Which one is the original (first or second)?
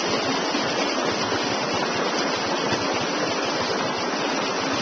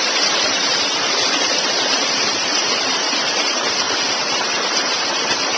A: first